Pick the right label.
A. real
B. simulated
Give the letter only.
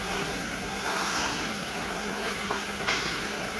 B